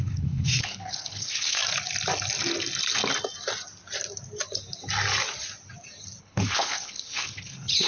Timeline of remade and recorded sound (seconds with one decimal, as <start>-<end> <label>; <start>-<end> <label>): 0.0-1.6 remade; 1.6-6.2 recorded; 6.2-7.9 remade